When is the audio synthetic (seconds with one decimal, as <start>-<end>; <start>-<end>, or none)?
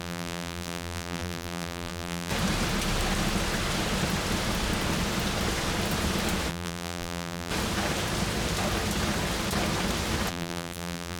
0.0-2.3; 6.5-7.5; 10.3-11.2